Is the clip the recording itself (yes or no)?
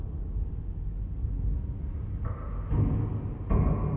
yes